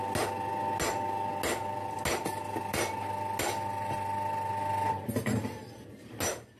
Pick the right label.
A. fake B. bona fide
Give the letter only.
B